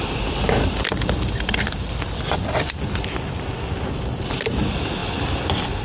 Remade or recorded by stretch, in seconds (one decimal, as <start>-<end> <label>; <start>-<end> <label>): 0.0-5.8 recorded